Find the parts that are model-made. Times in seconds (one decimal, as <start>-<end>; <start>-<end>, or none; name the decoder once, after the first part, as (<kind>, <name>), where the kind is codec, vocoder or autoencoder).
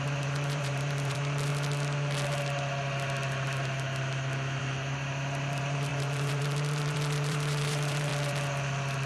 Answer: 0.0-1.5 (vocoder, BigVGAN v2); 4.6-8.1